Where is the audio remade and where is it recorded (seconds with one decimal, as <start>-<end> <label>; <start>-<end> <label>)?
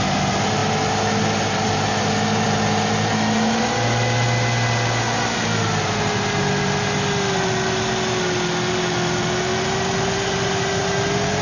0.0-11.4 recorded